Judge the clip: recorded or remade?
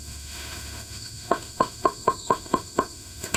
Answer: remade